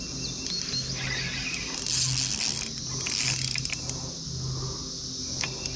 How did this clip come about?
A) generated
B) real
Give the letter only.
B